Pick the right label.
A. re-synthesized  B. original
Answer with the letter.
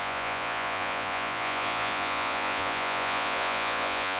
A